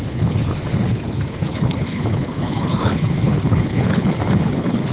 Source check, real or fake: fake